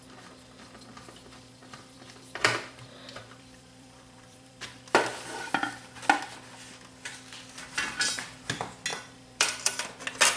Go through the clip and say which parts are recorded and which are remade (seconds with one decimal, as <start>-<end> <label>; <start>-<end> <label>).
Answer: 0.0-1.6 recorded; 1.6-5.0 remade; 5.0-8.9 recorded; 8.9-9.9 remade; 9.9-10.4 recorded